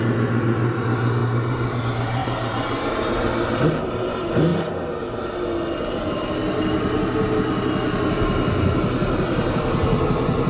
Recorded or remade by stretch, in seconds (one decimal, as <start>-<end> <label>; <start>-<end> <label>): 0.0-1.2 recorded; 1.2-1.8 remade; 1.8-2.2 recorded; 2.2-3.0 remade; 3.0-10.5 recorded